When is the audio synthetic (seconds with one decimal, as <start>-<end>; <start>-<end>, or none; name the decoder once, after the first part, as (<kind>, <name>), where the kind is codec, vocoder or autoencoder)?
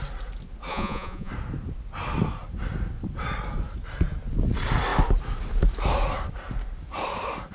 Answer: 0.7-1.3 (vocoder, Vocos)